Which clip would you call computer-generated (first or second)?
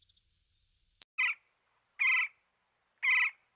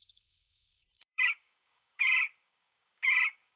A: second